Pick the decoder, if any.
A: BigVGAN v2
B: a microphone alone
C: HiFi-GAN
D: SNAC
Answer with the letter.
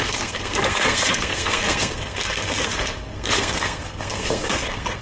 D